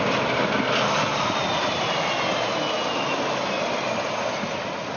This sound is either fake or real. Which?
real